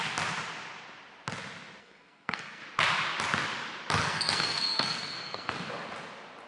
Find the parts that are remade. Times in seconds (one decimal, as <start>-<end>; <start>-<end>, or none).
1.8-2.6; 4.0-5.5

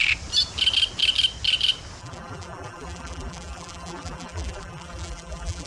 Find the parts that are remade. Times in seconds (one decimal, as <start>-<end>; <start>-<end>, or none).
2.0-5.7

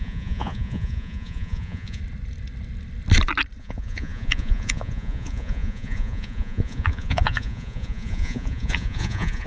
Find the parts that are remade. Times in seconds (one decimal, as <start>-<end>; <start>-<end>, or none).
0.0-2.0; 3.6-9.5

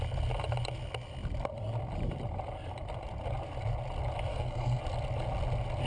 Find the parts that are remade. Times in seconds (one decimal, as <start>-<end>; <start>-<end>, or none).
4.3-4.8

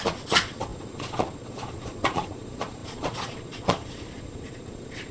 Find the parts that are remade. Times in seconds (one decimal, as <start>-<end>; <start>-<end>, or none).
0.0-5.1

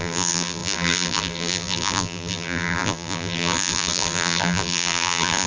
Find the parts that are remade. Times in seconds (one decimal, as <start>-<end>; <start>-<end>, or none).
0.0-5.5

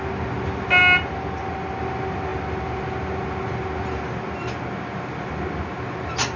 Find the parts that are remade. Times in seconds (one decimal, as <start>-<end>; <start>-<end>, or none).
none